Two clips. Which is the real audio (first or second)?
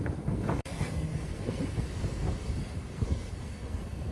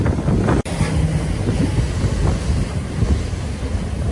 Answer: second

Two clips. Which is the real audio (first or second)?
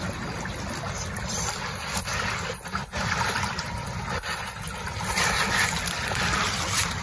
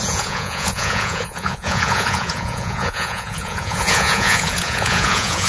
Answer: first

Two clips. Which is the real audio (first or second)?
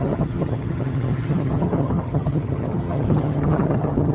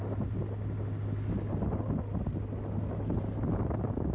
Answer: second